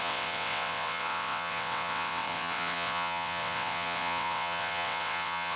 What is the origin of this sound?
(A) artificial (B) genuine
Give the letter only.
A